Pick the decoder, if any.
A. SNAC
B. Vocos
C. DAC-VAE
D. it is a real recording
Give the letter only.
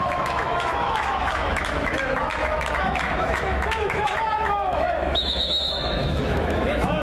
C